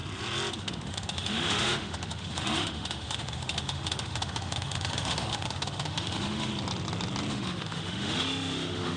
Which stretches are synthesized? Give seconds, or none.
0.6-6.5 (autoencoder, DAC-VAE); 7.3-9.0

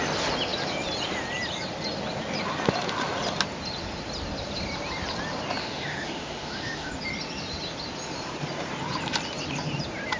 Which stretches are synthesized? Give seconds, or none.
5.6-6.9 (autoencoder, DAC-VAE)

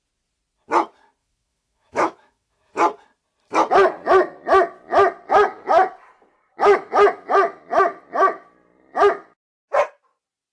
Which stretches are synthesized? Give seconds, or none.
1.2-2.7 (autoencoder, DAC-VAE)

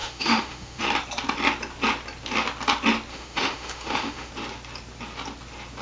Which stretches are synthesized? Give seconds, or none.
0.0-0.8 (autoencoder, DAC-VAE); 3.1-4.3